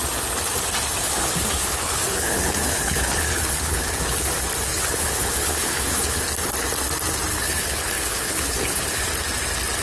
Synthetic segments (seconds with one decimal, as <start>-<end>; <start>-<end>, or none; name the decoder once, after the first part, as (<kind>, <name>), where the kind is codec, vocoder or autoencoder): 1.0-4.3 (codec, HILCodec); 4.7-6.2; 7.3-9.0